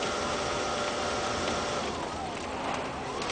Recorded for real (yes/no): yes